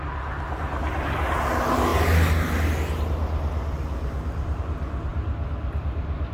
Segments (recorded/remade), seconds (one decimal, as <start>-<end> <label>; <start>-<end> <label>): 0.0-6.3 recorded